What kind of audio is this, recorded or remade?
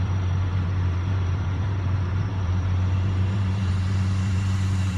remade